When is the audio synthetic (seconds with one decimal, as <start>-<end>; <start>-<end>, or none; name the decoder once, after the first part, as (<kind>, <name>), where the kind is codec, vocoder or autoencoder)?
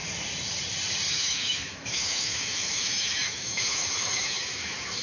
1.1-5.0 (autoencoder, DAC-VAE)